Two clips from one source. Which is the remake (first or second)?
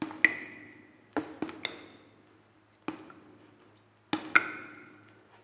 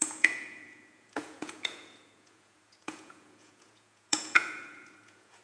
second